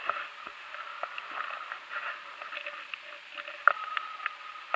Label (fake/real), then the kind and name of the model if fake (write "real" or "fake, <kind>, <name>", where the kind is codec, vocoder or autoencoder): real